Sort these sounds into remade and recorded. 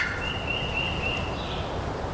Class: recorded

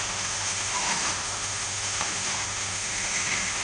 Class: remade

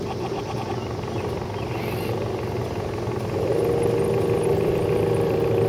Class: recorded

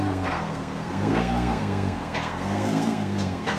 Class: remade